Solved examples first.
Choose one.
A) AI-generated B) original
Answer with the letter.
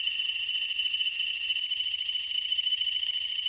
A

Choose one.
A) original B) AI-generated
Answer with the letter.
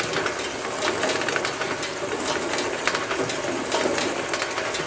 A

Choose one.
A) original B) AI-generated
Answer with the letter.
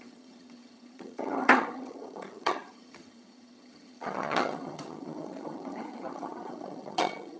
B